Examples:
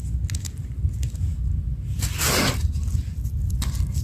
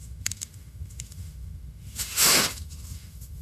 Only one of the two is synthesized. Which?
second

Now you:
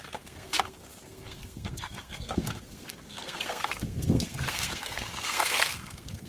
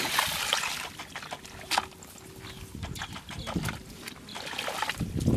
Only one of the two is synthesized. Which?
first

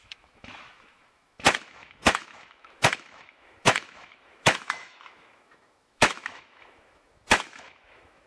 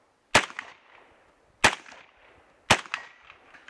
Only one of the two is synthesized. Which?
first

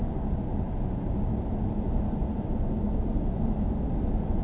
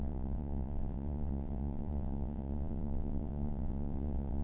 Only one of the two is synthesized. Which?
second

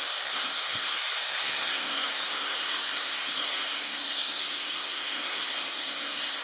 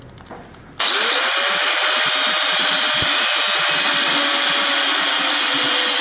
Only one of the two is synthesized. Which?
first